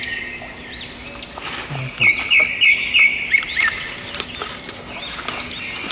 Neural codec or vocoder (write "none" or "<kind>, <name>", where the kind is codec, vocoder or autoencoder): none